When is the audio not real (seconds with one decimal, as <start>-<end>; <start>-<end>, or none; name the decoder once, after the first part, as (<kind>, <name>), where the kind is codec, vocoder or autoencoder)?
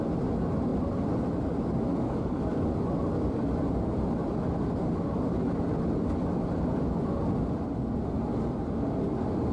1.9-2.7 (codec, DAC); 4.8-5.4